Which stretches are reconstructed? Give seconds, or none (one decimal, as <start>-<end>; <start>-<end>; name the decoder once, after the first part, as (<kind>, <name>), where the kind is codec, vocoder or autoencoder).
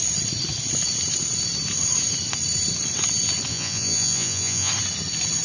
3.5-4.7 (vocoder, Vocos)